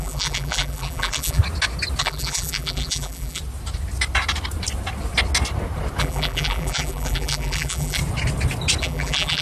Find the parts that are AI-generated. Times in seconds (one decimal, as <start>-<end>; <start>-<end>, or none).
0.0-1.4; 2.0-3.4; 6.0-8.0; 8.8-9.4